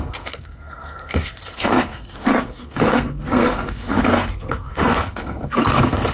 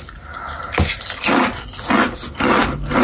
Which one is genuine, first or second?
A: second